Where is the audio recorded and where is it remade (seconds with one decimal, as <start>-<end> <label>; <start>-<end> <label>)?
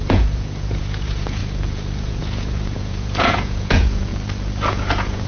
0.0-4.1 remade; 4.1-4.7 recorded; 4.7-5.3 remade